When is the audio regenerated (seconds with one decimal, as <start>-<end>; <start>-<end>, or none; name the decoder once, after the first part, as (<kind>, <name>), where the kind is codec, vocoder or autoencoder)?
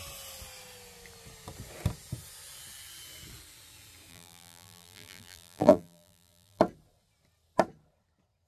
4.1-6.6 (vocoder, BigVGAN v2)